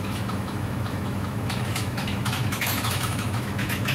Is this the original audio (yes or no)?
no